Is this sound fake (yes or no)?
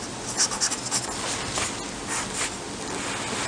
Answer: no